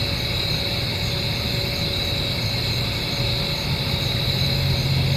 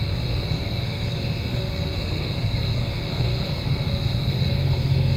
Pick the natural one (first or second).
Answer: first